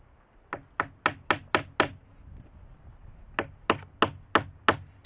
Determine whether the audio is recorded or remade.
recorded